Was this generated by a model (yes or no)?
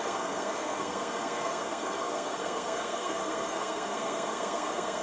yes